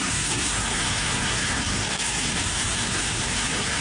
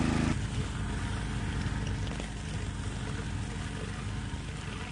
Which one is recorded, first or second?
second